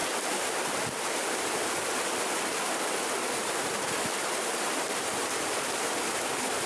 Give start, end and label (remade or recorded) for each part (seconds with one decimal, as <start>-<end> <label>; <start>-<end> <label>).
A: 0.0-6.7 recorded